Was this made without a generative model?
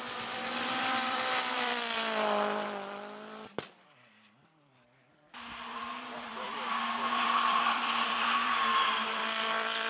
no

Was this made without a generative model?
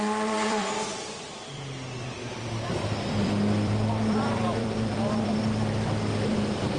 no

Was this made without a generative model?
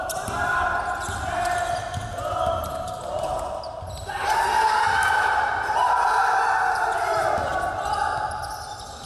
yes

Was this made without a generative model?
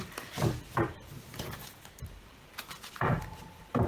yes